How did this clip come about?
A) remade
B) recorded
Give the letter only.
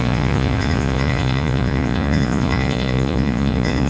A